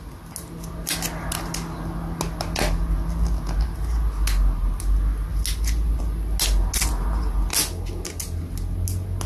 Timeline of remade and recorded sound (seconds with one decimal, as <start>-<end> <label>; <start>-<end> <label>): 0.0-9.3 recorded